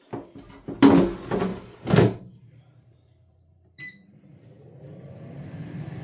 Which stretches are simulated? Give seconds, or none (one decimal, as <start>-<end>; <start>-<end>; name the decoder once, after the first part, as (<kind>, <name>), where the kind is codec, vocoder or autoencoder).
1.5-5.1 (vocoder, BigVGAN v2)